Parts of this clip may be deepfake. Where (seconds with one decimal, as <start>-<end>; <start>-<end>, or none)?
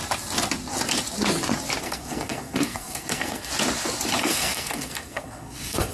1.8-3.5; 4.2-5.9